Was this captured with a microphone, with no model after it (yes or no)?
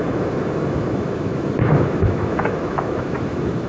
no